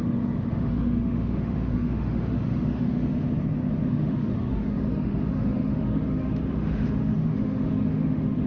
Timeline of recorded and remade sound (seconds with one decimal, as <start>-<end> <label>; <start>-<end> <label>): 0.0-3.1 remade; 3.1-3.9 recorded; 3.9-8.5 remade